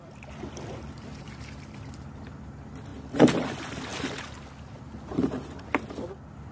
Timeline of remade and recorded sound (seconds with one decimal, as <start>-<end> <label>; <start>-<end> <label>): 0.0-6.5 recorded